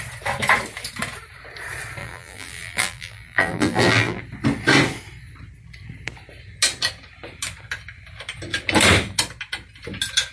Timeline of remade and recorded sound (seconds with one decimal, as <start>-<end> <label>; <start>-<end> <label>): 0.0-2.0 recorded; 2.0-4.2 remade; 4.2-10.3 recorded